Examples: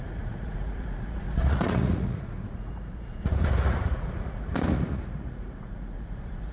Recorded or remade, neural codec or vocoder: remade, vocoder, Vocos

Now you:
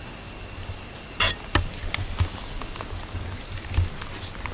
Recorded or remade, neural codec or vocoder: recorded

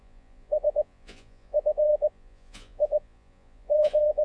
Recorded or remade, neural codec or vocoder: remade, vocoder, Vocos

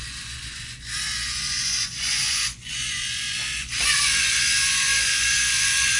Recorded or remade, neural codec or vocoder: remade, vocoder, Vocos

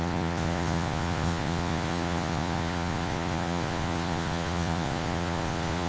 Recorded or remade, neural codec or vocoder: remade, vocoder, Vocos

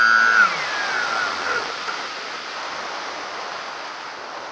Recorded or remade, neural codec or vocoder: recorded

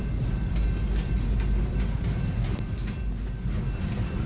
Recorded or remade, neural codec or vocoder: recorded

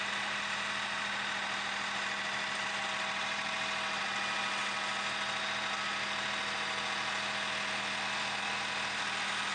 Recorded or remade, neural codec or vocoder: recorded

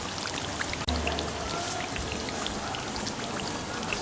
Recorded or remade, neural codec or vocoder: recorded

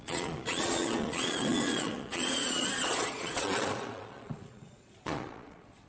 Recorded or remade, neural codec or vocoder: remade, vocoder, Vocos